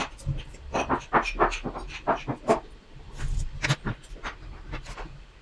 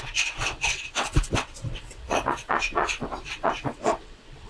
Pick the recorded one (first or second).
first